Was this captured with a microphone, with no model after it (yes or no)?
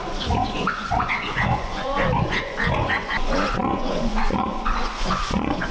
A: no